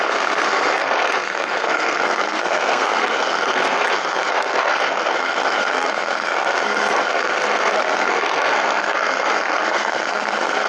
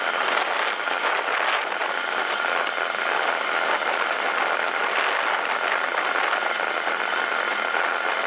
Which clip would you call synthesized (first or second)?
first